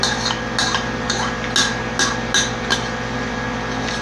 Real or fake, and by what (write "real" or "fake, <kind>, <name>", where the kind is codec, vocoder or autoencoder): real